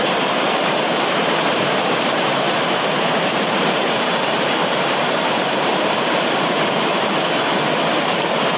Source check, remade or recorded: remade